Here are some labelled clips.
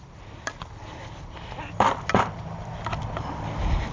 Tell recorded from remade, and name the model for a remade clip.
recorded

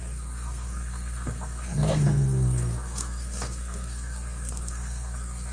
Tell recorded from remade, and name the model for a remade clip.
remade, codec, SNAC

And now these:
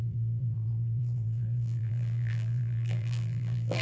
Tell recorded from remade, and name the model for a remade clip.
remade, vocoder, BigVGAN v2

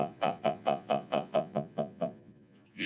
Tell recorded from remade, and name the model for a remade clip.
remade, vocoder, Vocos